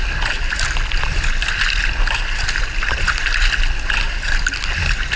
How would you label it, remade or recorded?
recorded